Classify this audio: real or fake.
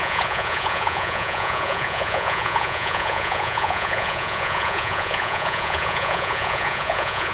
fake